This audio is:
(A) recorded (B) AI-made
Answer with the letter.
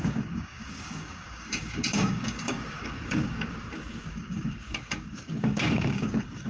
B